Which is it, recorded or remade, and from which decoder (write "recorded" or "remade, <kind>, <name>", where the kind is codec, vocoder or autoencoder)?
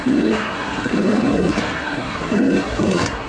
remade, codec, SNAC